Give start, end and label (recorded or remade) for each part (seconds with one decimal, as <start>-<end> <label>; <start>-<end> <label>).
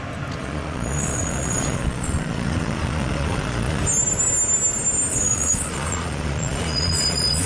0.0-0.4 recorded; 0.4-3.8 remade; 3.8-5.1 recorded; 5.1-7.5 remade